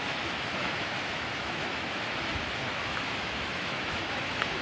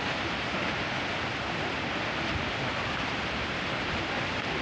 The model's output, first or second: first